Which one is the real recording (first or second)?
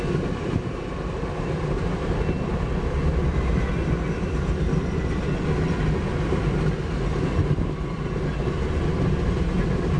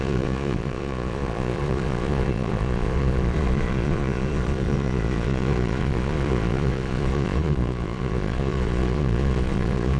first